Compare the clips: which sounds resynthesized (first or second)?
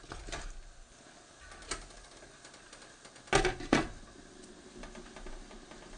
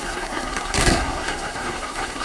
second